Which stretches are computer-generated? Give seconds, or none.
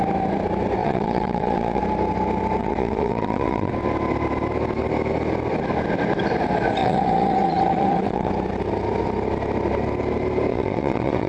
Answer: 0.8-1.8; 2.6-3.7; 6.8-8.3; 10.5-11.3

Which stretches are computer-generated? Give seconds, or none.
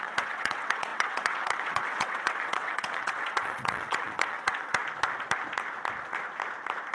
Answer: 0.0-4.8